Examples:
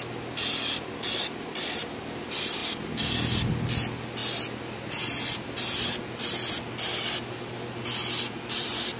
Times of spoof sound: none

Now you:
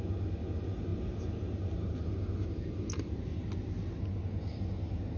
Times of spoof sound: none

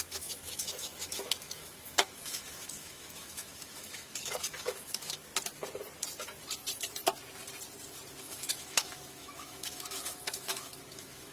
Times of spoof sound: 0.0-5.3 (autoencoder, DAC-VAE); 8.2-11.3

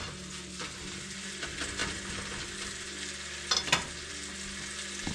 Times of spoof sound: none

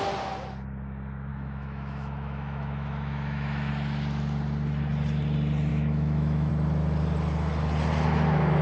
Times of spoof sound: 1.3-3.7 (autoencoder, DAC-VAE); 5.7-6.5

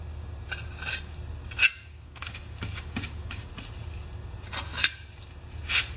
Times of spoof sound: 1.6-3.5 (codec, DAC)

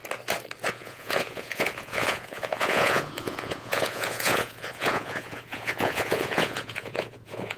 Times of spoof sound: 0.7-7.6 (vocoder, Vocos)